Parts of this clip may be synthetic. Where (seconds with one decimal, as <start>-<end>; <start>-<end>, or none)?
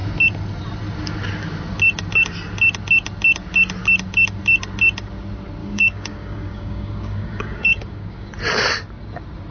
5.6-8.3